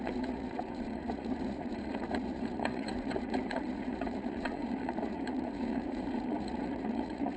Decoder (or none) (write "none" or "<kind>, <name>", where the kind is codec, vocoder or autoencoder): vocoder, Vocos